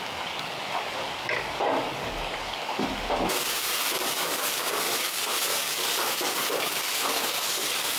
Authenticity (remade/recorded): remade